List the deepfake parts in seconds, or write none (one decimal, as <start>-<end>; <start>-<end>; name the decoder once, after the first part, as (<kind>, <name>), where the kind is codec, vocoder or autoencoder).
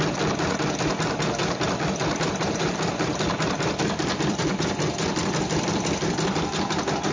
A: 1.4-5.4 (vocoder, BigVGAN v2)